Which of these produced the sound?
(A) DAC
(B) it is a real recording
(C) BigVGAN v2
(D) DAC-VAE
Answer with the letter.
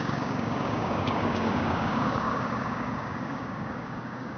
A